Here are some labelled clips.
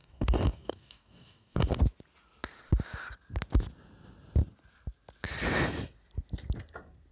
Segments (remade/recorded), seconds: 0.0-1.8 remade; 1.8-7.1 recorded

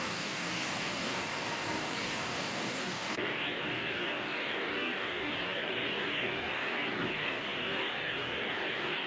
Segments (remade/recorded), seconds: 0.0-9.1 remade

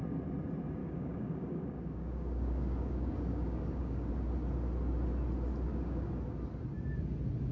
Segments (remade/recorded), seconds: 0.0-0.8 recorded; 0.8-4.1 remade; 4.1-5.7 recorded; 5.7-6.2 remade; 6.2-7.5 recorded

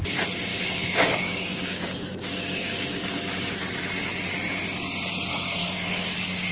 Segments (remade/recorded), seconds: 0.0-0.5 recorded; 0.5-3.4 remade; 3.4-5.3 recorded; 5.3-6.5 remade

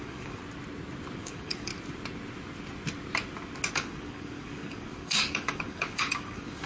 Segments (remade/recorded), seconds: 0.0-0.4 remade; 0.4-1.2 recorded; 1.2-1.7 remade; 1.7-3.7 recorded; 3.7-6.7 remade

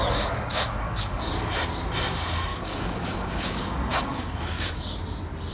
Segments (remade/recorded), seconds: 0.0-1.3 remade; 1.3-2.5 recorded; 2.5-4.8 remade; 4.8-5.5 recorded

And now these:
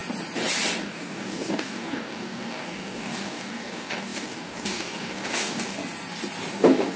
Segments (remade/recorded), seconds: 0.0-0.8 recorded; 0.8-5.8 remade; 5.8-6.5 recorded; 6.5-7.0 remade

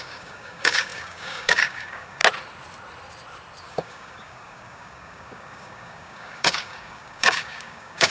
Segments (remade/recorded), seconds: 0.0-2.2 remade; 2.2-3.6 recorded; 3.6-8.1 remade